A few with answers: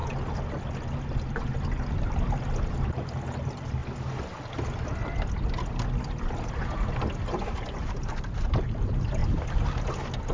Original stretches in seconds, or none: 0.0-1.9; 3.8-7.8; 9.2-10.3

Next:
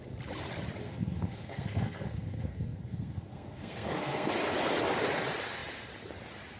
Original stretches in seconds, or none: 0.0-0.8; 4.3-6.6

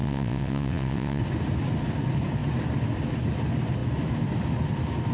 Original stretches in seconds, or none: 1.2-5.1

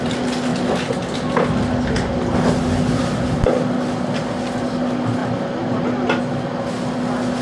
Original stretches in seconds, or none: 0.0-7.4

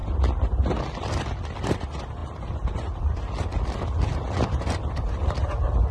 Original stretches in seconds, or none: 0.0-1.6; 3.5-4.4

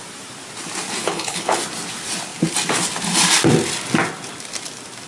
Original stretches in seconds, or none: 0.0-1.0; 1.6-5.1

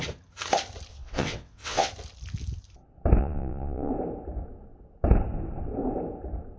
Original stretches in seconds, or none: 0.0-0.9; 1.9-3.2; 3.9-6.6